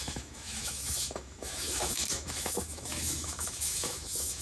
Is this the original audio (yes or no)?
no